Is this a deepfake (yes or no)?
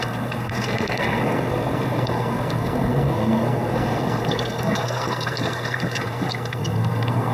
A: yes